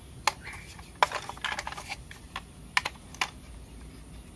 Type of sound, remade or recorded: recorded